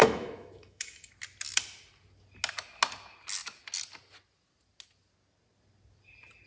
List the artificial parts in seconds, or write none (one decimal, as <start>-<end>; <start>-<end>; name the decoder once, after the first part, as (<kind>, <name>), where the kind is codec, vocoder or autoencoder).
0.0-1.1 (autoencoder, DAC-VAE)